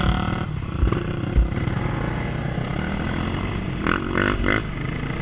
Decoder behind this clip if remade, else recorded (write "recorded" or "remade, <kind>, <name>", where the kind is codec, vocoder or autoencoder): recorded